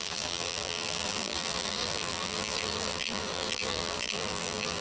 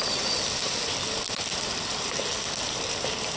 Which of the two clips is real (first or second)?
second